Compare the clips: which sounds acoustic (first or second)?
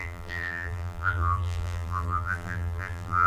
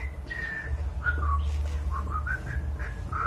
second